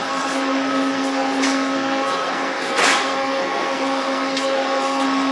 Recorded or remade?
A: remade